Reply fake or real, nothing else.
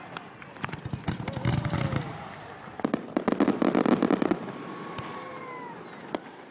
real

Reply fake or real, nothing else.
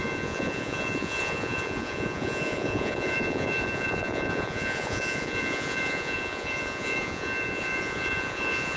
fake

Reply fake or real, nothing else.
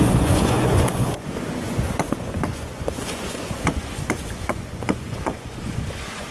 fake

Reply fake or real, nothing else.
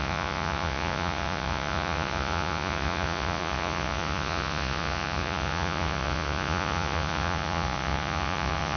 fake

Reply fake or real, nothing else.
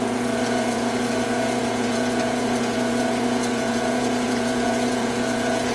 fake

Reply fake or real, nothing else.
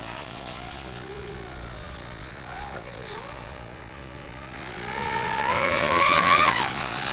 fake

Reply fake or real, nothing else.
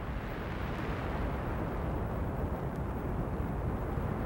real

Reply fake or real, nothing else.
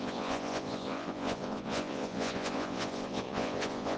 fake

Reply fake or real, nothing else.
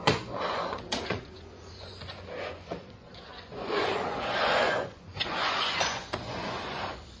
fake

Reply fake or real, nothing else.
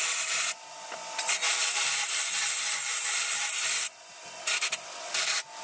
real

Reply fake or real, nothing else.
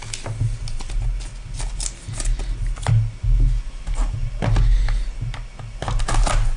real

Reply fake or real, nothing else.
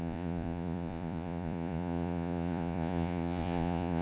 fake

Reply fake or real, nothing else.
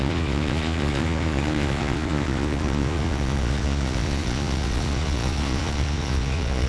fake